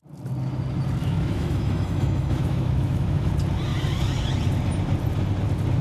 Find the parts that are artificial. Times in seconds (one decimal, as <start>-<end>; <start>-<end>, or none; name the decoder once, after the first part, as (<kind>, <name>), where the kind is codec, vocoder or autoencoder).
1.0-3.3 (autoencoder, DAC-VAE)